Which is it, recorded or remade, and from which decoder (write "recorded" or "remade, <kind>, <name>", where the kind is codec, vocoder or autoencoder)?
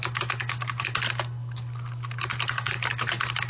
recorded